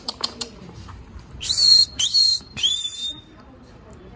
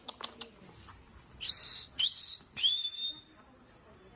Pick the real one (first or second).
second